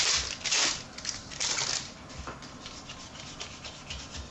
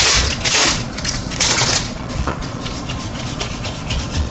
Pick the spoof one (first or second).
second